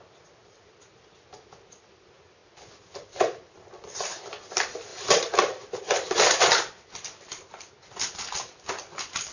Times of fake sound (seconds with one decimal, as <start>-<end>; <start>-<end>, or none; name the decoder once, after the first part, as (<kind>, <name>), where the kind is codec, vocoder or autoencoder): 4.9-6.4 (vocoder, BigVGAN v2)

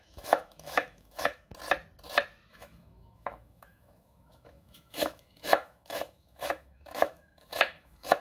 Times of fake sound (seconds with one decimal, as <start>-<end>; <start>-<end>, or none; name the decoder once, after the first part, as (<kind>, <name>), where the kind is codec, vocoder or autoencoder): 0.0-1.5 (autoencoder, DAC-VAE); 2.5-8.2

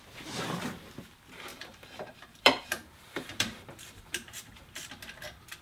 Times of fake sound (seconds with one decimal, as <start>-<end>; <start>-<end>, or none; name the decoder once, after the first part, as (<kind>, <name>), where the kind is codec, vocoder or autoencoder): 1.5-4.9 (vocoder, BigVGAN v2)

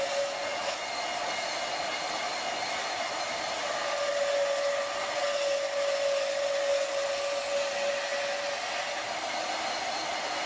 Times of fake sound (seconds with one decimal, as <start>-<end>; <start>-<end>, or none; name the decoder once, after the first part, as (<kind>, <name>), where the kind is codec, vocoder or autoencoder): none